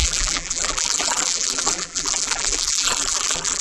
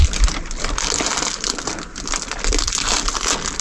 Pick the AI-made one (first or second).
first